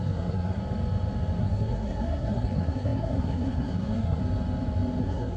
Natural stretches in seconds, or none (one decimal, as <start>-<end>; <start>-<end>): 0.6-1.4; 4.2-5.0